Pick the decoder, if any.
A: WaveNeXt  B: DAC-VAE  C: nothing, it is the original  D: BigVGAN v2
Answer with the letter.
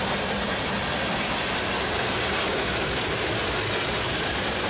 C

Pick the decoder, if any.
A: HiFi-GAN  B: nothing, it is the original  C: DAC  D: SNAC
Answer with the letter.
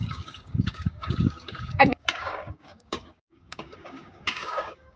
C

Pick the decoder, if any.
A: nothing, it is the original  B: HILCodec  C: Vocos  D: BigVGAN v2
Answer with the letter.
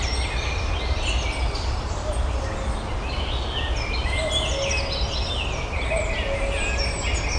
A